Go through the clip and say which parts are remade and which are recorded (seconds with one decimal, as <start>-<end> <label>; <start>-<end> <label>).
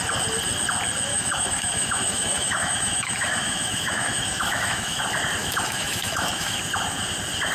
0.0-1.1 recorded; 1.1-5.0 remade; 5.0-5.4 recorded; 5.4-6.6 remade; 6.6-7.5 recorded